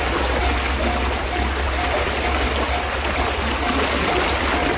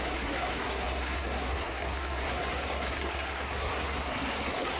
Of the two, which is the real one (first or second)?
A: first